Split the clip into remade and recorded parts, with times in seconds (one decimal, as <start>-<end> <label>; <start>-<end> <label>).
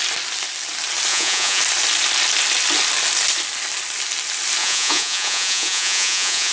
0.0-1.1 recorded; 1.1-1.6 remade; 1.6-4.6 recorded; 4.6-6.5 remade